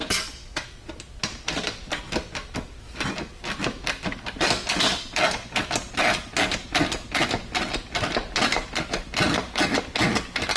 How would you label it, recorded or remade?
recorded